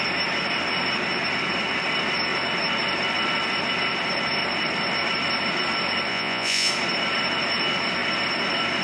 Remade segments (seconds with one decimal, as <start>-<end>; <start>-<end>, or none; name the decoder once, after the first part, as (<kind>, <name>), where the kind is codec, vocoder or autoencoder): 6.1-6.7 (vocoder, Vocos)